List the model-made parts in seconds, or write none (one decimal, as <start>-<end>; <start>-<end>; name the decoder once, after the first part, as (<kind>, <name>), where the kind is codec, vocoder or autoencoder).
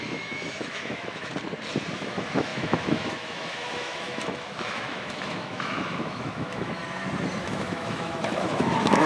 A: 0.0-1.3 (autoencoder, DAC-VAE); 1.9-6.8; 7.4-9.1